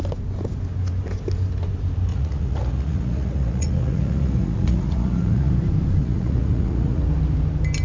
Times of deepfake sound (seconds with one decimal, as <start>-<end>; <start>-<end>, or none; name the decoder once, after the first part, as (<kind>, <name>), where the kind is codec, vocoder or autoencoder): 2.1-5.5 (vocoder, Vocos); 6.0-7.0